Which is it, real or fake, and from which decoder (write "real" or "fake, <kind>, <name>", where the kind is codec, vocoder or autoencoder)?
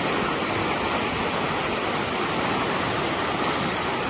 real